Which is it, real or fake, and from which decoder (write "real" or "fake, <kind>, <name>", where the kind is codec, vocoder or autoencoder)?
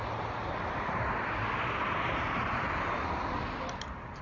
real